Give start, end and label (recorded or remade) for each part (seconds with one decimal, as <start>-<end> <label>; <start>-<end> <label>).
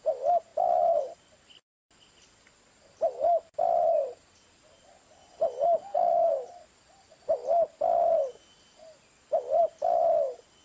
0.0-5.8 recorded; 5.8-6.3 remade; 6.3-10.6 recorded